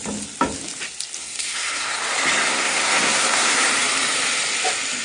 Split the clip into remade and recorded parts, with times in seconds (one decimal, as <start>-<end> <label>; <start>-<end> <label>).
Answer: 0.0-1.2 recorded; 1.2-2.0 remade; 2.0-2.5 recorded; 2.5-3.7 remade; 3.7-5.0 recorded